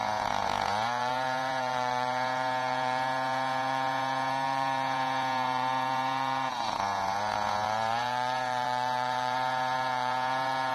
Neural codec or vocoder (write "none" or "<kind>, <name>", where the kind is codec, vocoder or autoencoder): vocoder, Vocos